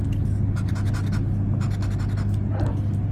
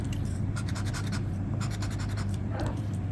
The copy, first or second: second